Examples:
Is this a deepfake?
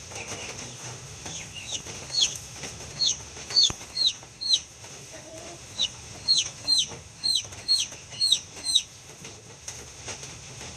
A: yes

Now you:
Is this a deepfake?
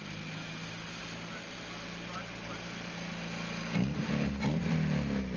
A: no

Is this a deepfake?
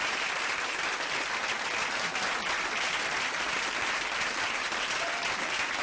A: no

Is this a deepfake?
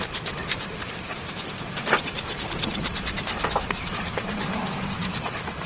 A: yes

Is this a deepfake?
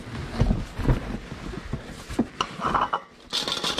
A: no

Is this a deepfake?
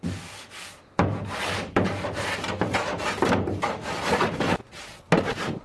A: no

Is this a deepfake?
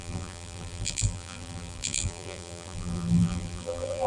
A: yes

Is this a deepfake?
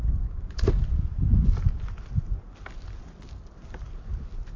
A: no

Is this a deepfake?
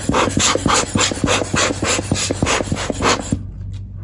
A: no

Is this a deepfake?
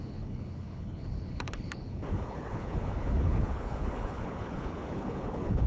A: yes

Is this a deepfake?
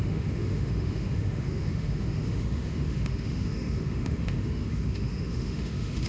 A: yes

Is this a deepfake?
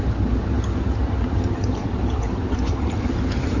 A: yes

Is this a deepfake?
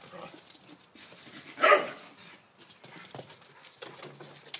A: no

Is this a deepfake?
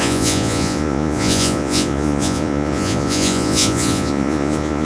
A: yes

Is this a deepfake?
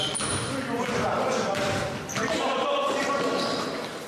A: yes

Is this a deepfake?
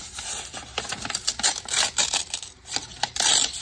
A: no